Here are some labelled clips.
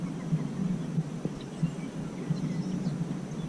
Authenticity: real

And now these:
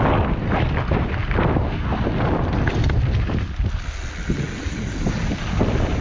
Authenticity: real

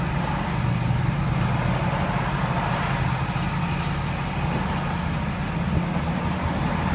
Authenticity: real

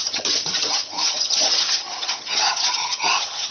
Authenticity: fake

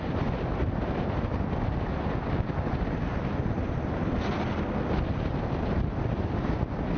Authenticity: real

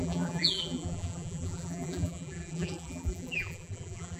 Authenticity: fake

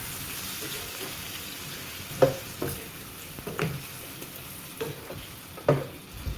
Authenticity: real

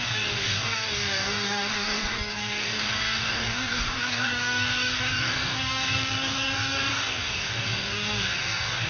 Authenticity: fake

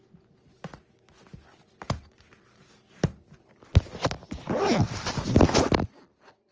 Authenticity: real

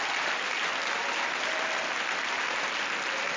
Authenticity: real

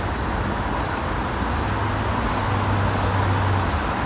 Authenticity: real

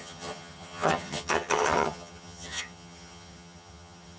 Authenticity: fake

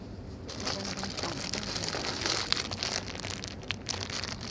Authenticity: fake